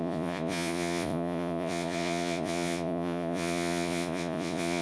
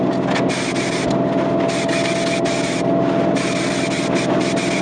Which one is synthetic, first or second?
first